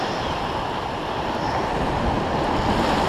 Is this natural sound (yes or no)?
yes